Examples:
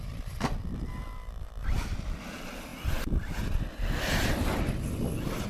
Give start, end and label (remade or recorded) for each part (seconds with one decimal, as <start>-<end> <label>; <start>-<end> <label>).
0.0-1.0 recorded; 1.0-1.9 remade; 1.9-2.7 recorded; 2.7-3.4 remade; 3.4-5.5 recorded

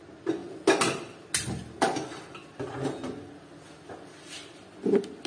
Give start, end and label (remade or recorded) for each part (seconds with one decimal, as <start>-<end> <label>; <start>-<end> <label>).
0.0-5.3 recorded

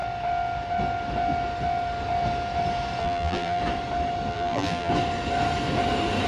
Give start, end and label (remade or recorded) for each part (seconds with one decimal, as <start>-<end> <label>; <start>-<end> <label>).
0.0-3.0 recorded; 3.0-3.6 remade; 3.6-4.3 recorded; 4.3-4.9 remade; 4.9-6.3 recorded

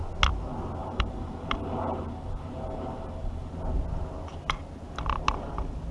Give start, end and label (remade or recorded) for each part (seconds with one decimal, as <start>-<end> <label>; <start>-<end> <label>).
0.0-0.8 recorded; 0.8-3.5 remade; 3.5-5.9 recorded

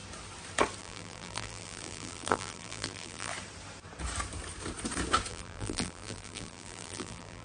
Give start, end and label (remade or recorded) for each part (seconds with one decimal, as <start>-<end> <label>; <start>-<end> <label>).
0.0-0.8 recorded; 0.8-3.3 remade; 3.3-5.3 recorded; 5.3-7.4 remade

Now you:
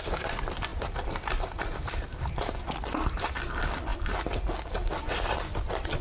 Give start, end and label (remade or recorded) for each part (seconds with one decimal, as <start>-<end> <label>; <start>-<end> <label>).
0.0-0.7 recorded; 0.7-2.7 remade; 2.7-6.0 recorded